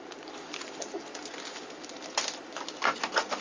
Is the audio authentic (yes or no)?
yes